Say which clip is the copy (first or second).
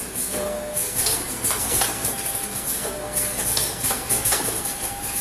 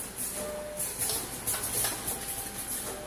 first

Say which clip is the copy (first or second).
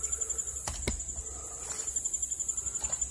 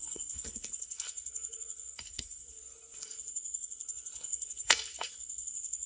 second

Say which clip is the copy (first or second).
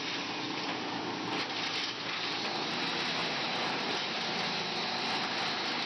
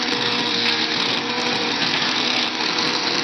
second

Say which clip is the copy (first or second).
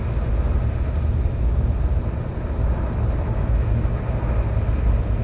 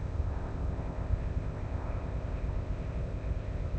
second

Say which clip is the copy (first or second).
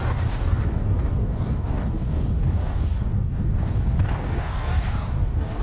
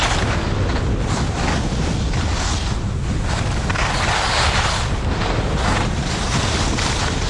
first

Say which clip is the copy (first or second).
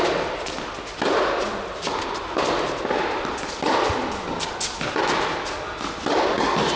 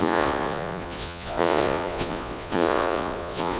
second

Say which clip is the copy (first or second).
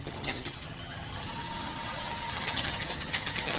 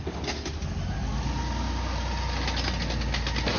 first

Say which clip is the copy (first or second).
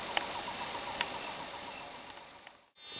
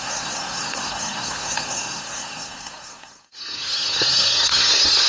second